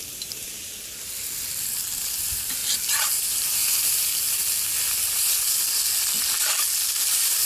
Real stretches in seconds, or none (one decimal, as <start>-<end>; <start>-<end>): 0.0-7.5

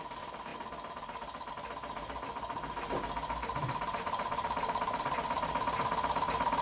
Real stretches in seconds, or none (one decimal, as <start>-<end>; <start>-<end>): 0.0-3.6; 5.0-6.6

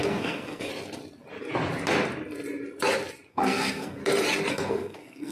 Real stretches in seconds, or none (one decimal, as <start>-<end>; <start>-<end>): 0.7-3.3; 4.0-4.5

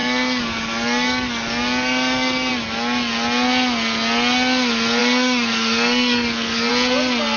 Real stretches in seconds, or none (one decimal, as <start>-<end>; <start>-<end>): 2.5-5.0; 6.7-7.4